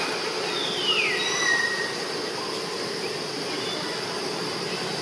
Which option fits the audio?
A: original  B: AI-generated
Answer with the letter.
A